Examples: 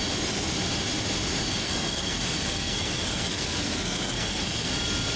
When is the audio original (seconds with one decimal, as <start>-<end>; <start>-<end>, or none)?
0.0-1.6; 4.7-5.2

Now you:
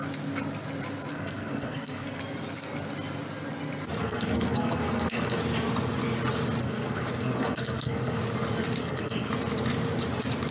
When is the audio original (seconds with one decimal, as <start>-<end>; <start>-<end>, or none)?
0.0-1.1; 2.2-4.0; 5.4-6.6; 8.2-8.8; 9.3-10.5

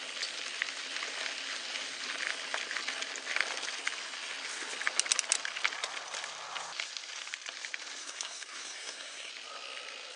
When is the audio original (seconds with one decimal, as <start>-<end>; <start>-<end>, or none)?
0.0-8.0; 9.3-10.2

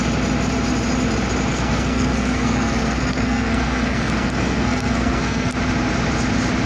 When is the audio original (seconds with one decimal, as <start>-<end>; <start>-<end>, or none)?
0.0-1.5; 5.5-6.7

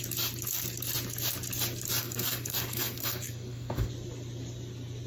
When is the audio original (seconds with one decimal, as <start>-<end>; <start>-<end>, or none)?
0.0-2.0; 3.9-5.1